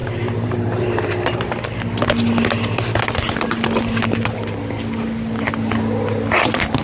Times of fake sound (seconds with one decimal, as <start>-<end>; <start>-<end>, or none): 0.0-1.5